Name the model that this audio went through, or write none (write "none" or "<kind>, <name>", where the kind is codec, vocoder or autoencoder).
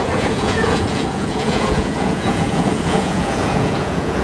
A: vocoder, Vocos